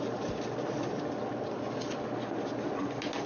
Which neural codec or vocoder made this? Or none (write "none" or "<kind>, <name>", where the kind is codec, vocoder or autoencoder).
none